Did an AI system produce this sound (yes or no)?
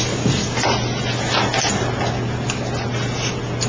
no